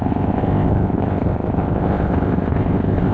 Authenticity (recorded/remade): remade